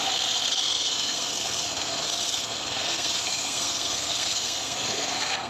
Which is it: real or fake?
fake